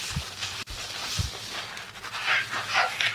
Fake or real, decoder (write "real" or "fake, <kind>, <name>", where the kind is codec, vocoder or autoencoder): real